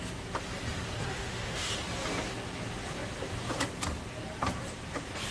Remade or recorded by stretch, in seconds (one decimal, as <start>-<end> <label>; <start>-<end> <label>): 0.0-1.1 recorded; 1.1-1.7 remade; 1.7-5.3 recorded